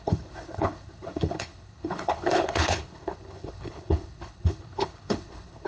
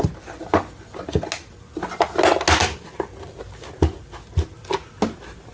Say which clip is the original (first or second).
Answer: second